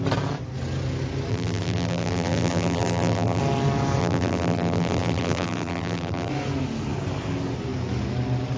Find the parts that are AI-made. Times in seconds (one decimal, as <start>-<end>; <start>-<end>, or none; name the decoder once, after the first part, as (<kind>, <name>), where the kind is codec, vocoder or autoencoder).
1.3-3.4 (vocoder, BigVGAN v2); 4.0-6.3